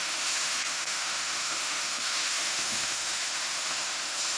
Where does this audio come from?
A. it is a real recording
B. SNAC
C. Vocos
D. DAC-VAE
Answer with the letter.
D